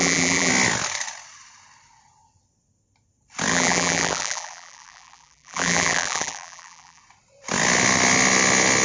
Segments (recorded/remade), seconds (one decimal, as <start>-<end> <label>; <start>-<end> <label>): 0.0-0.5 remade; 0.5-3.5 recorded; 3.5-7.0 remade; 7.0-8.8 recorded